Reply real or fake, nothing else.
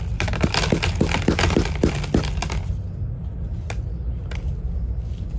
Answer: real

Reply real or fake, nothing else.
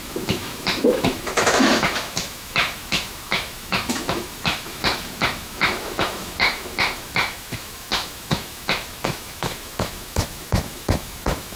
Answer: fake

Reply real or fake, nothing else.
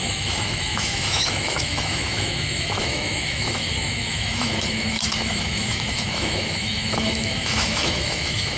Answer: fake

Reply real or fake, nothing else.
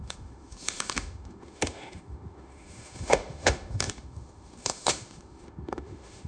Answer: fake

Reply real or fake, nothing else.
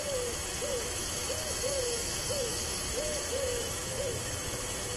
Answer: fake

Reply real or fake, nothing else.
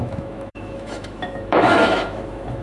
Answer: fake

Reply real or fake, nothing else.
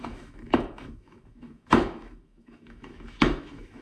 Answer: fake